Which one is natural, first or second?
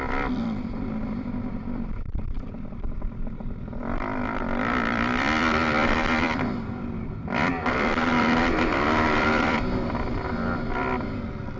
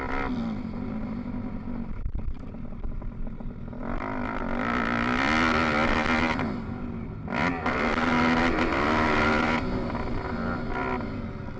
second